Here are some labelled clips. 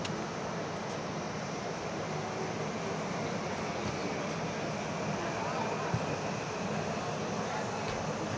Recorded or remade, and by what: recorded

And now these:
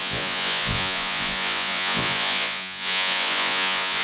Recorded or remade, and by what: remade, vocoder, Vocos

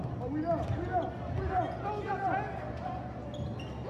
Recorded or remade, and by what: recorded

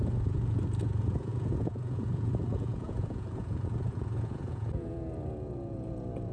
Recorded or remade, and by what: remade, vocoder, Vocos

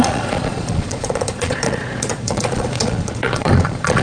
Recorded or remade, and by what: remade, vocoder, Vocos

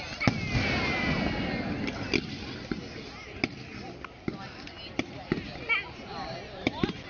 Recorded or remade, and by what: recorded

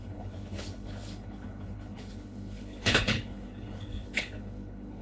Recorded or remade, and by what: remade, codec, HILCodec